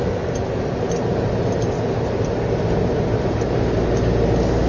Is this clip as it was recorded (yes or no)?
yes